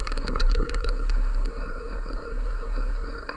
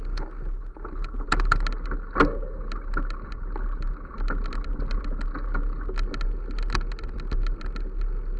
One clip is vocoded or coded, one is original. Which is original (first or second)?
second